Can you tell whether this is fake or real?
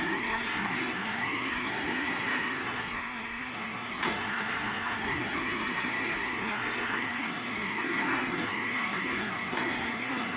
fake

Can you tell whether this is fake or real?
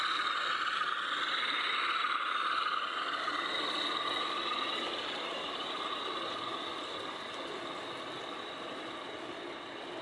real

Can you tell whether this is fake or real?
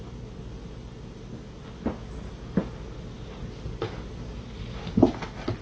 real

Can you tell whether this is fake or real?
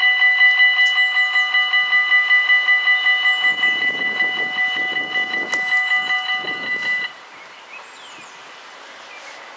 real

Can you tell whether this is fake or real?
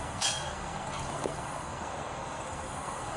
fake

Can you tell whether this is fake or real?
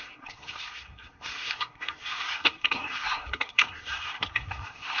fake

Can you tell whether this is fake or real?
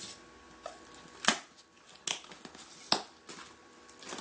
real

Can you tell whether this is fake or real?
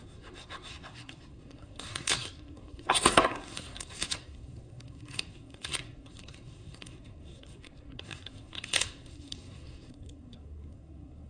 fake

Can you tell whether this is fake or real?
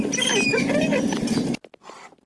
real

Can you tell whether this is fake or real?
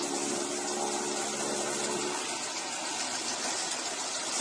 real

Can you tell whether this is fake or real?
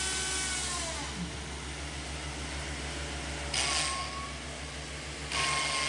real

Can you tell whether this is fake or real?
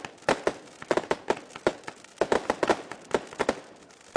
real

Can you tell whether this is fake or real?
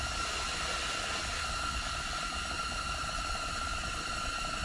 real